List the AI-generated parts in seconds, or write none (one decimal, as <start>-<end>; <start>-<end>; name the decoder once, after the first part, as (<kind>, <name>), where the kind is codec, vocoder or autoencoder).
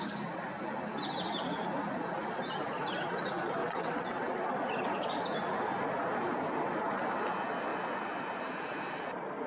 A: 3.6-4.3 (vocoder, WaveNeXt)